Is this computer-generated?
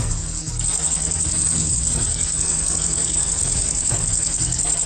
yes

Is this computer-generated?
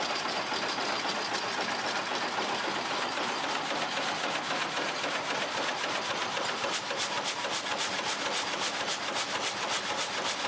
no